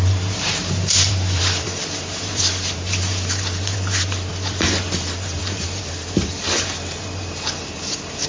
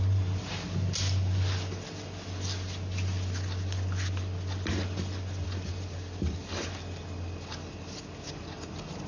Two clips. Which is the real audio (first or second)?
second